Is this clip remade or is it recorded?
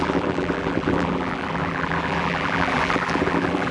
remade